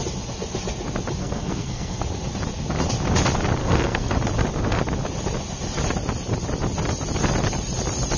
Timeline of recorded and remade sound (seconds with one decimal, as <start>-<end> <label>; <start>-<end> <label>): 0.0-1.2 recorded; 1.2-2.0 remade; 2.0-3.6 recorded; 3.6-4.1 remade; 4.1-8.2 recorded